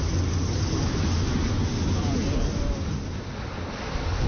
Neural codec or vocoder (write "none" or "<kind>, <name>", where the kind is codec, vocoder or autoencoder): none